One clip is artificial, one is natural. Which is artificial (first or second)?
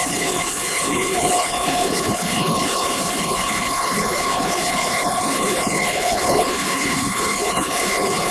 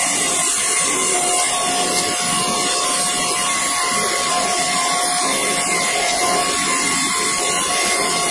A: first